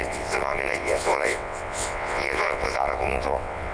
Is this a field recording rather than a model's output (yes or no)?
no